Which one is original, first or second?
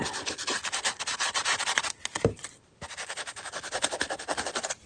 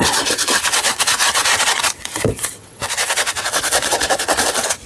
first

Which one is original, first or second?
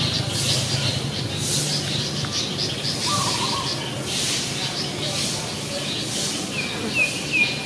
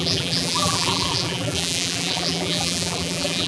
first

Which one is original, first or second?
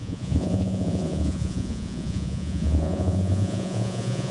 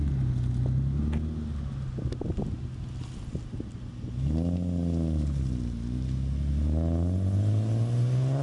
second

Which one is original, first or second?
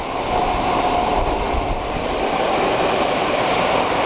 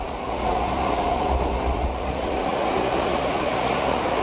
first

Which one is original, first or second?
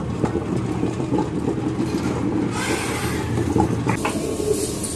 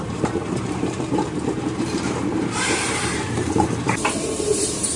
first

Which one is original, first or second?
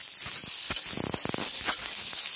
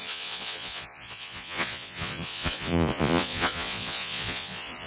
first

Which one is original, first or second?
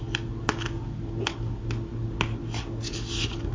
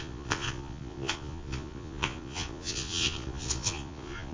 first